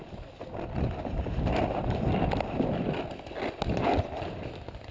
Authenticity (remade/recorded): recorded